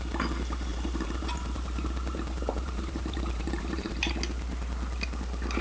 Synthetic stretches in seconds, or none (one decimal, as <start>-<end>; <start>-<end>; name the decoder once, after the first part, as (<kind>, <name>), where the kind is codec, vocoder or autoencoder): 0.7-4.1 (vocoder, BigVGAN v2)